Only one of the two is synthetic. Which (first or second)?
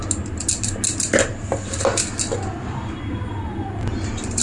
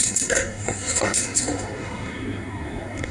second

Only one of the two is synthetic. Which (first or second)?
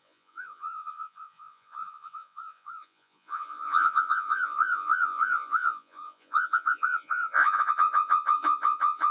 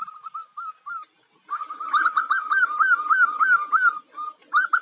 first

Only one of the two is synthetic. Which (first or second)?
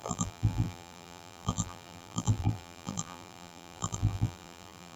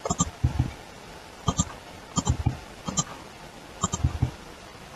first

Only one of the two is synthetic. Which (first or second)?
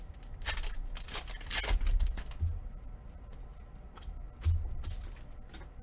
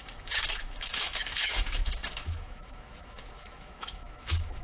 second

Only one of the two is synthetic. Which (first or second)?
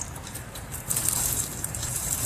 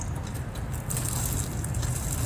first